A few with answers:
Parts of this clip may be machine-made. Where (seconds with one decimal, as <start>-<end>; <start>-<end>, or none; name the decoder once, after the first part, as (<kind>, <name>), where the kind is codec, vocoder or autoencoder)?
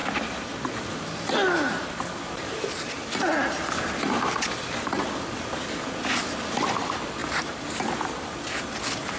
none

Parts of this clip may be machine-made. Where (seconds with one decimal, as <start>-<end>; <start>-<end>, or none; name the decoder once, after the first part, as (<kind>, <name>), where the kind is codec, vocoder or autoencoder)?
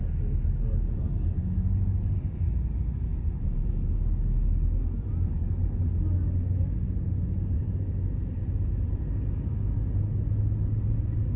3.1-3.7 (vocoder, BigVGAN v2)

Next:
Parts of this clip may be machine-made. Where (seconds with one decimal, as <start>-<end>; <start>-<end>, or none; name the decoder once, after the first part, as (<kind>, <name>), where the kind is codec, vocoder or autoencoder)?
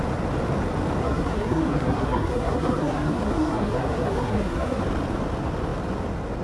1.0-4.8 (codec, SNAC)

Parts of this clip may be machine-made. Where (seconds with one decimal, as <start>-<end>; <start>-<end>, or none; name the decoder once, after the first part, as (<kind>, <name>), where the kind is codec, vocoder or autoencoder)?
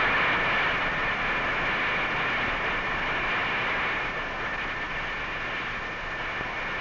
none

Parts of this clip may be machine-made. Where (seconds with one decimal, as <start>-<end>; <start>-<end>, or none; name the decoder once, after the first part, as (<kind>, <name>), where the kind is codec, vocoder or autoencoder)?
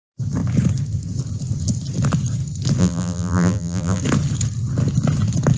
2.8-4.0 (vocoder, BigVGAN v2)